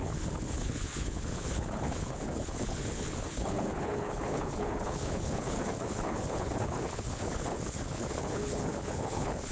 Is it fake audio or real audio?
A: fake